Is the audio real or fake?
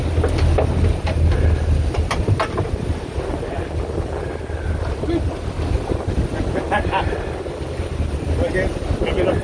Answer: real